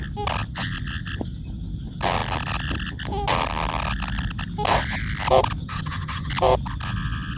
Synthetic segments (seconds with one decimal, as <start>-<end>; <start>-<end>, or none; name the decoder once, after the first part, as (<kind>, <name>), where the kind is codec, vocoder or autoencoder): 5.6-6.3 (vocoder, HiFi-GAN)